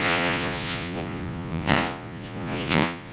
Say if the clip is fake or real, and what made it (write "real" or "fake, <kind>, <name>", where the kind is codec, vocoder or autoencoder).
fake, vocoder, Vocos